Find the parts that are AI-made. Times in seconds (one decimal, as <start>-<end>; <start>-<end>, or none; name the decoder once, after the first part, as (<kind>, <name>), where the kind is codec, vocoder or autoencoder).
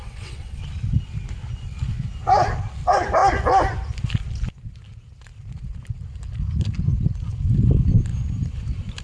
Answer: 0.0-0.6 (vocoder, WaveNeXt)